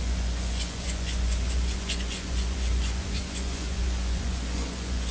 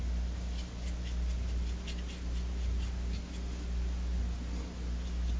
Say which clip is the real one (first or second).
second